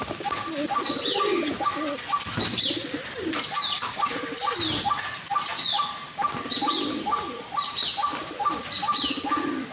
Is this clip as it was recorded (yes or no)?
yes